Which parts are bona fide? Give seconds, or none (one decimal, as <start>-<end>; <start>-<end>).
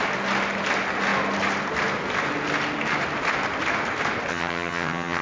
0.0-4.3